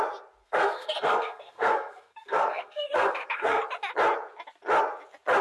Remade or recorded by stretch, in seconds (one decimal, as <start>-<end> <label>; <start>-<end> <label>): 0.0-0.4 recorded; 0.4-3.6 remade; 3.6-5.4 recorded